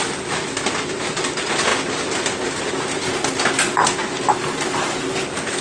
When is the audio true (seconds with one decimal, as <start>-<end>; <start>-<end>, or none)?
0.0-5.6